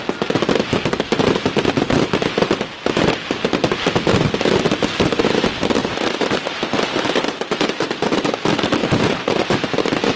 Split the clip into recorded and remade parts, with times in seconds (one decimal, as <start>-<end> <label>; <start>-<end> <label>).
0.0-5.8 recorded; 5.8-6.4 remade; 6.4-8.8 recorded; 8.8-9.4 remade; 9.4-10.2 recorded